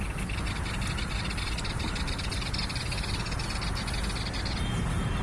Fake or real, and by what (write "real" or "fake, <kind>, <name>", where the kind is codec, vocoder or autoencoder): real